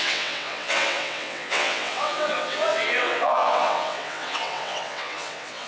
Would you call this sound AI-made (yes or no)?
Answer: yes